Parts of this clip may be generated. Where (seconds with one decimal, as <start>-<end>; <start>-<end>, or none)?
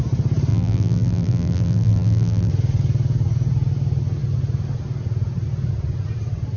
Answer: 0.5-2.5